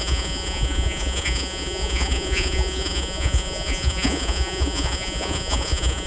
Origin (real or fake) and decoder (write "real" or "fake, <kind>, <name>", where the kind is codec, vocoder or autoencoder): fake, vocoder, Vocos